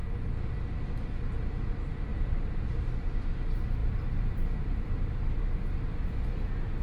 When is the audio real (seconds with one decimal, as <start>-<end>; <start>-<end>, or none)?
0.0-2.1; 2.9-3.8; 5.4-6.8